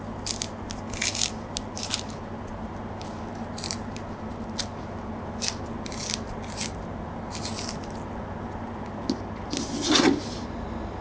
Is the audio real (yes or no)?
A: yes